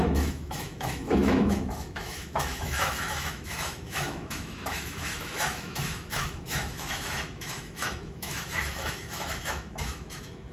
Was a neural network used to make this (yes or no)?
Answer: yes